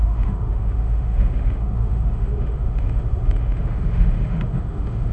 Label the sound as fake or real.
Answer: fake